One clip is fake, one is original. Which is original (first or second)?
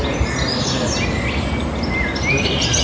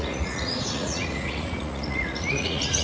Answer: first